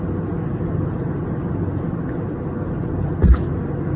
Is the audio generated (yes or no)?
no